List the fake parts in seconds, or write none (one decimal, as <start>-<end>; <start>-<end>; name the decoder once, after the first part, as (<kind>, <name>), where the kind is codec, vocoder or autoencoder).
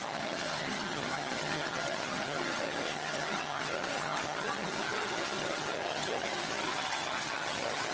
0.0-7.9 (vocoder, HiFi-GAN)